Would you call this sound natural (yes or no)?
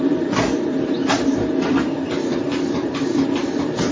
no